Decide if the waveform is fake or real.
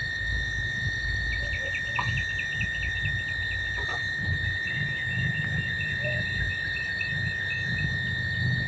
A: real